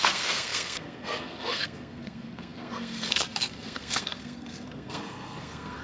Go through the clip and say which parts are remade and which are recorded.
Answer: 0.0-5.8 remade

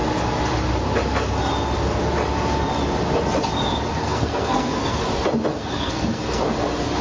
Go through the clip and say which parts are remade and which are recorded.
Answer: 0.0-4.0 recorded; 4.0-5.0 remade; 5.0-5.5 recorded; 5.5-6.4 remade; 6.4-7.0 recorded

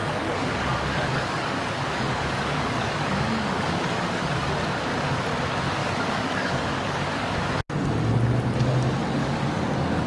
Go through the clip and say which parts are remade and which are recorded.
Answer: 0.0-4.5 remade; 4.5-5.8 recorded; 5.8-7.5 remade; 7.5-9.2 recorded; 9.2-10.1 remade

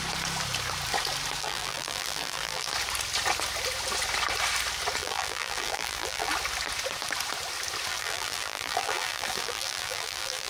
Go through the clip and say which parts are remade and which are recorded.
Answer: 0.0-1.4 recorded; 1.4-2.7 remade; 2.7-5.0 recorded; 5.0-6.3 remade; 6.3-7.9 recorded; 7.9-10.5 remade

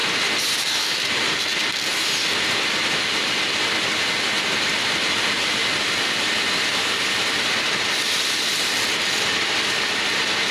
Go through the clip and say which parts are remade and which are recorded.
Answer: 0.0-3.6 remade; 3.6-5.6 recorded; 5.6-7.1 remade; 7.1-10.5 recorded